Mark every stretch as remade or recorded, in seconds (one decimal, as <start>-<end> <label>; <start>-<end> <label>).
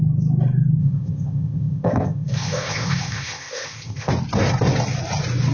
0.0-0.8 recorded; 0.8-4.1 remade; 4.1-5.5 recorded